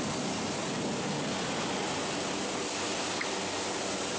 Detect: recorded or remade recorded